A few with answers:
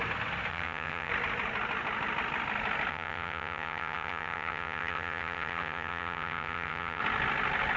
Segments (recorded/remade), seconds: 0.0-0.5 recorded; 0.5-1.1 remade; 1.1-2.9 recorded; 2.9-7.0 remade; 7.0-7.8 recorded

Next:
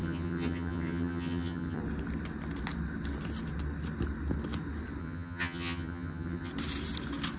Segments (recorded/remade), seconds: 0.0-1.8 remade; 1.8-5.0 recorded; 5.0-6.5 remade; 6.5-7.4 recorded

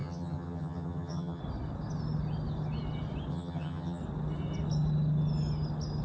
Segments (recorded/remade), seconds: 0.0-1.4 remade; 1.4-3.3 recorded; 3.3-4.0 remade; 4.0-6.0 recorded

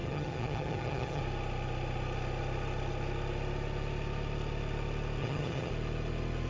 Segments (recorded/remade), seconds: 0.0-1.2 remade; 1.2-5.2 recorded; 5.2-5.7 remade; 5.7-6.5 recorded